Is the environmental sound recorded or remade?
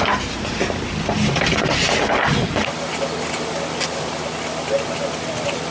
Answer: recorded